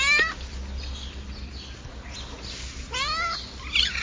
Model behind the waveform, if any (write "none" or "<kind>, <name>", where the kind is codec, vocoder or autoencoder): none